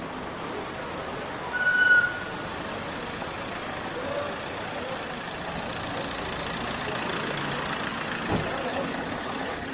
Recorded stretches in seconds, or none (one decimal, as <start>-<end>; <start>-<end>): 0.0-8.7